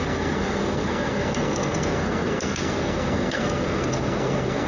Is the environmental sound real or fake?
fake